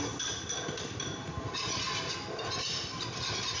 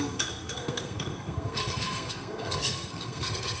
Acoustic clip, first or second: first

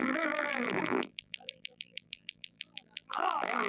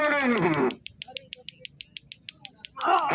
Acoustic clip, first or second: second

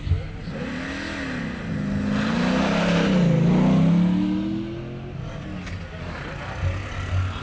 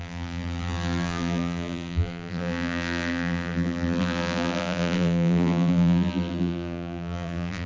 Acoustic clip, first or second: first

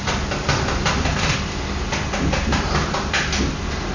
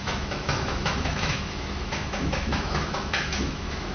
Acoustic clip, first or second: first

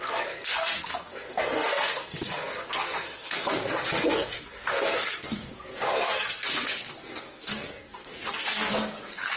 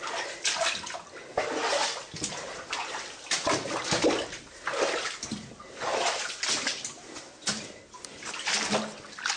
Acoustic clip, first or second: second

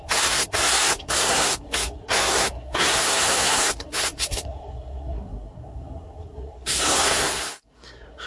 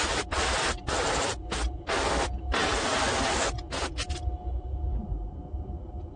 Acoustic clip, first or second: second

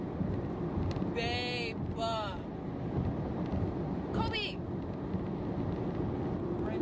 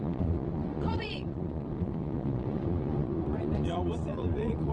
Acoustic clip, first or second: first